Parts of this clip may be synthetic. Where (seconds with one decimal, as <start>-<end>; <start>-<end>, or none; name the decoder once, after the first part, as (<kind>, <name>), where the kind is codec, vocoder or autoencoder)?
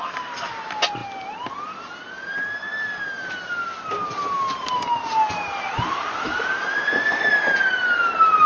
none